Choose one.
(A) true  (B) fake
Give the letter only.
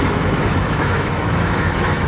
B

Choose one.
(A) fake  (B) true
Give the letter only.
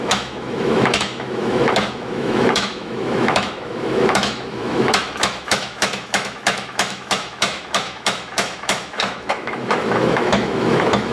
A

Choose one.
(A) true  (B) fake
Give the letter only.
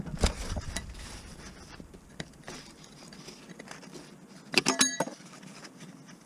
A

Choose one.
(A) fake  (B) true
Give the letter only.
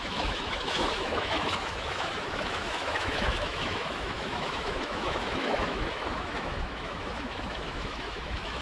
A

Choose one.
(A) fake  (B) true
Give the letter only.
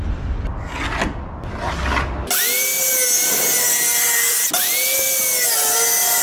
B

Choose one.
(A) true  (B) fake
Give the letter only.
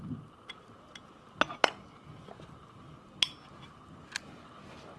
A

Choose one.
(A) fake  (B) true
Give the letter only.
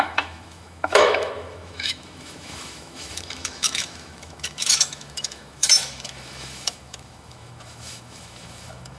A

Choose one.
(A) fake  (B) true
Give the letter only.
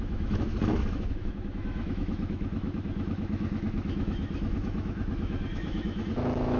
A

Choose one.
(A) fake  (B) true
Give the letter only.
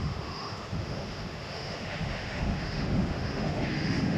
A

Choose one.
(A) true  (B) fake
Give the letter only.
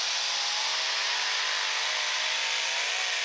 A